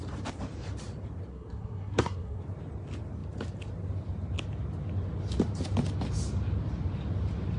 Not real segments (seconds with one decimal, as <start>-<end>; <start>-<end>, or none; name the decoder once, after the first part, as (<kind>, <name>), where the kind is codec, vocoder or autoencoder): 1.3-2.4 (codec, SNAC)